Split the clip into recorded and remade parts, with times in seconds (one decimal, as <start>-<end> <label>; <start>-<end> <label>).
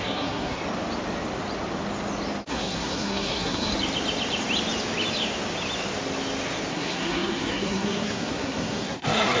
0.0-0.6 remade; 0.6-2.5 recorded; 2.5-3.7 remade; 3.7-6.7 recorded; 6.7-9.4 remade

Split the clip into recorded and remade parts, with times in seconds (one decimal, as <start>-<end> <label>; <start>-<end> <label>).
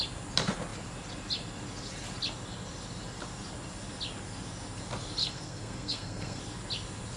0.0-5.2 recorded; 5.2-6.4 remade; 6.4-7.2 recorded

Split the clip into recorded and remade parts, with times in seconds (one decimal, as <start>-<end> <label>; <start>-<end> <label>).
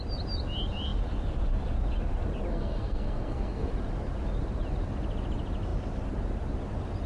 0.0-2.5 recorded; 2.5-3.7 remade; 3.7-7.1 recorded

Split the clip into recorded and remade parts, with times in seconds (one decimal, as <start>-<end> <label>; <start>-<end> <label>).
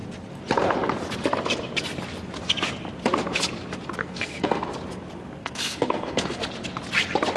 0.0-4.0 recorded; 4.0-4.6 remade; 4.6-5.4 recorded; 5.4-6.4 remade; 6.4-7.4 recorded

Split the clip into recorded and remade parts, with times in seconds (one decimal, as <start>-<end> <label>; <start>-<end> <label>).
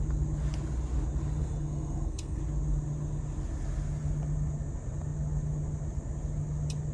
0.0-1.4 recorded; 1.4-2.4 remade; 2.4-6.9 recorded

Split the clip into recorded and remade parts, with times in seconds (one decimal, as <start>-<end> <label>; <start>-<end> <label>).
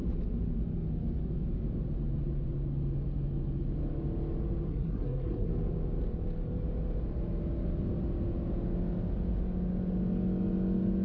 0.0-4.7 recorded; 4.7-5.5 remade; 5.5-11.0 recorded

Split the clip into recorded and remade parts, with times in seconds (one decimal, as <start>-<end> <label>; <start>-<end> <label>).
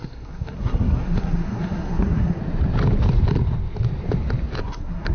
0.0-2.4 remade; 2.4-4.6 recorded; 4.6-5.1 remade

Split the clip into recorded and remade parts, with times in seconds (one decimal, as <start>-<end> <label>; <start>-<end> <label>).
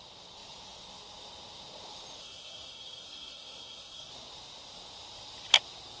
0.0-2.2 recorded; 2.2-4.1 remade; 4.1-6.0 recorded